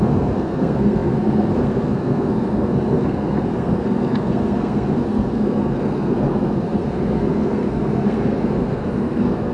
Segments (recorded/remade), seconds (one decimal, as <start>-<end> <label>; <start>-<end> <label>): 0.0-9.5 remade